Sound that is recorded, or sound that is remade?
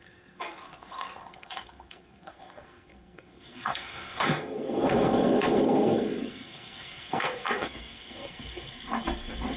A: remade